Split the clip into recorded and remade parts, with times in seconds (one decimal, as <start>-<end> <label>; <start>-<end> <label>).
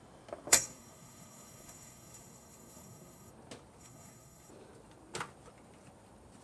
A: 0.0-0.5 recorded; 0.5-3.3 remade; 3.3-3.8 recorded; 3.8-4.5 remade; 4.5-6.4 recorded